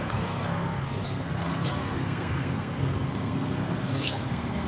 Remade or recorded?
remade